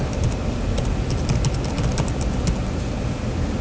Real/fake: real